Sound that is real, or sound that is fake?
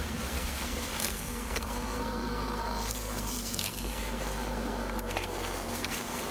fake